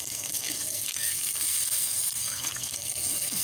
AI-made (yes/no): yes